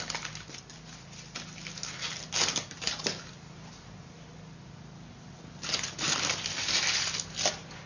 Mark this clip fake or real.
real